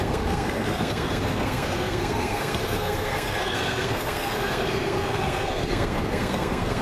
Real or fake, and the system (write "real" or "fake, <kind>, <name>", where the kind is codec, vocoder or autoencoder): fake, codec, SNAC